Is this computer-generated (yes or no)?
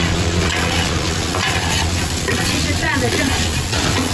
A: yes